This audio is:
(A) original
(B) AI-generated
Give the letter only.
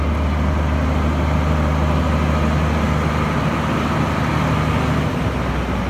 A